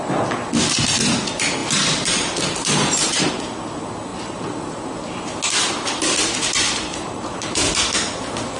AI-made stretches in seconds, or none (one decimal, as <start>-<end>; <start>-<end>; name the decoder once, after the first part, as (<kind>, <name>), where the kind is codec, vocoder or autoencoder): 1.6-3.3 (vocoder, BigVGAN v2); 4.1-4.9; 6.9-7.7